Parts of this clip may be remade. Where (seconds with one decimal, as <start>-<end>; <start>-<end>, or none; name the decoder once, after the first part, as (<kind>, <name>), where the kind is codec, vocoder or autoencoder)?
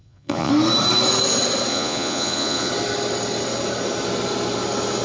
0.0-0.5 (vocoder, Vocos); 1.7-2.7